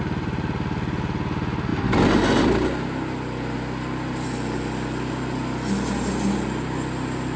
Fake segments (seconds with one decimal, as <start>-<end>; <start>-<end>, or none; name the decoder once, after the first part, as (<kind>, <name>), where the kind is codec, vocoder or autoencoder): none